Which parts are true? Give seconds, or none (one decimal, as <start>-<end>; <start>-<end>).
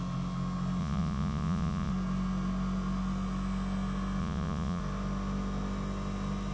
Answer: 0.0-0.8; 1.9-4.2; 4.8-6.5